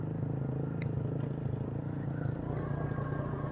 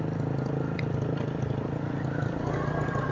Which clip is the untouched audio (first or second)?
first